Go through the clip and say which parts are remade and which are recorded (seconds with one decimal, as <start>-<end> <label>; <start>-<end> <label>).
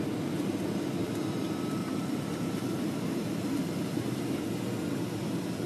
0.0-1.8 recorded; 1.8-4.4 remade; 4.4-5.7 recorded